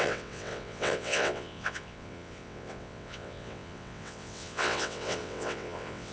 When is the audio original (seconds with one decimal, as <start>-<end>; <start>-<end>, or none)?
none